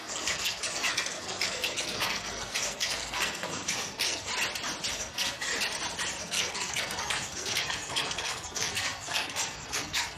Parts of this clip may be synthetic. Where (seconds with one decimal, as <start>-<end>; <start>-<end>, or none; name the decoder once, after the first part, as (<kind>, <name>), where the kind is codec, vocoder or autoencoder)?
0.0-4.3 (codec, SNAC); 4.9-5.5; 6.2-10.2